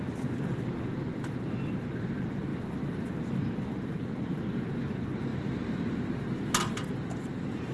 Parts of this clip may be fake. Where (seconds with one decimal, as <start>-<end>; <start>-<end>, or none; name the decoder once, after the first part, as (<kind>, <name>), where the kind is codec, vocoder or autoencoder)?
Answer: none